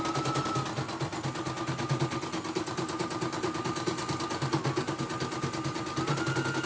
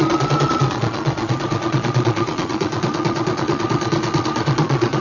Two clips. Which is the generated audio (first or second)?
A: second